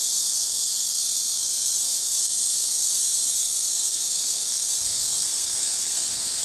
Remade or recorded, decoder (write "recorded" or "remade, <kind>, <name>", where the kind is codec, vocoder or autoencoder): remade, codec, SNAC